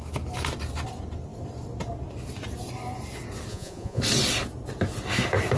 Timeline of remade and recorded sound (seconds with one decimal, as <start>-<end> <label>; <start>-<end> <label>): 0.0-3.5 recorded; 3.5-4.0 remade; 4.0-5.6 recorded